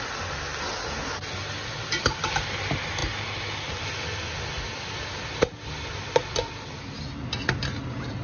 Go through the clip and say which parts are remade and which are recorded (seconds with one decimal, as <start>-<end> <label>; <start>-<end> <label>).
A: 0.0-8.2 recorded